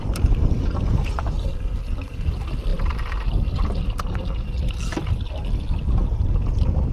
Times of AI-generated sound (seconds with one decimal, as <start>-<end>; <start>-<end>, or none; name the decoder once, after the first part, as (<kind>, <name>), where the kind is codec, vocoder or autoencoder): none